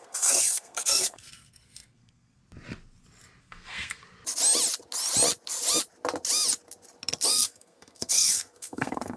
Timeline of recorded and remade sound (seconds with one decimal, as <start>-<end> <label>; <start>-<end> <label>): 0.0-2.4 remade; 2.4-3.4 recorded; 3.4-4.0 remade; 4.0-7.3 recorded; 7.3-9.2 remade